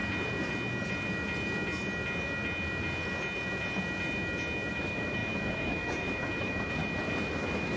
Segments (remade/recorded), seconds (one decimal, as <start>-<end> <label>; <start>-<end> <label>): 0.0-4.7 recorded; 4.7-6.8 remade; 6.8-7.3 recorded; 7.3-7.8 remade